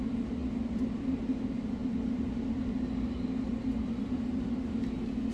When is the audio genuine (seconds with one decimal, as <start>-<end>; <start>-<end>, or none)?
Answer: 0.0-5.3